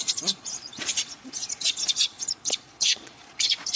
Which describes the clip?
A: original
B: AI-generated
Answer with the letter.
B